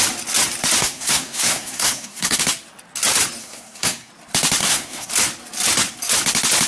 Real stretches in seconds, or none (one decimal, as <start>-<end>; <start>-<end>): 0.0-0.8; 2.4-3.4; 4.1-4.6; 5.1-6.7